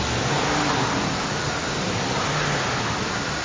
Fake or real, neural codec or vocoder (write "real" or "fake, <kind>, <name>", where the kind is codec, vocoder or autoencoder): real